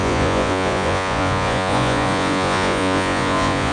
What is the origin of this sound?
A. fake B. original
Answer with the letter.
A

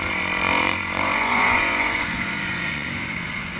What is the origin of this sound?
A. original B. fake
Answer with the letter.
B